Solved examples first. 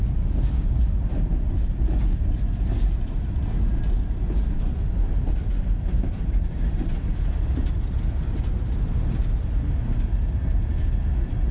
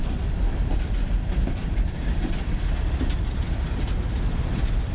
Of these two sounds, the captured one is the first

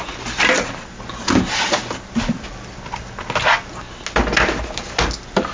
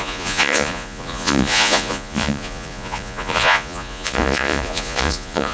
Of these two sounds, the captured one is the first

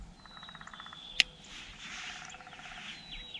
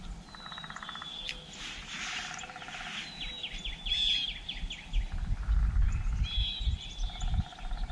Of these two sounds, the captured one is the first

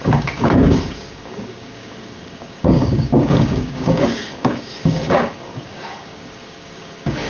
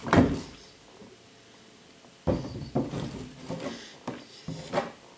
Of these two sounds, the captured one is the second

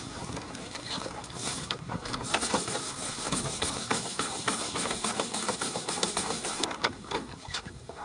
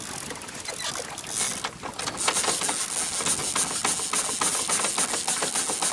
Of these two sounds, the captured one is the second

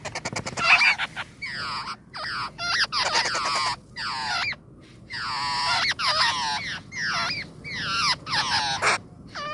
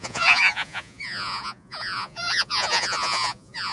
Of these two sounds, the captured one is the first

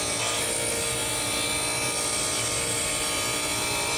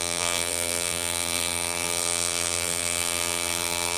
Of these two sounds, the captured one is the first